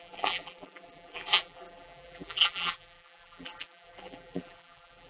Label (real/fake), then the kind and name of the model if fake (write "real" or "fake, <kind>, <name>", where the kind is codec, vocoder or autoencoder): fake, vocoder, BigVGAN v2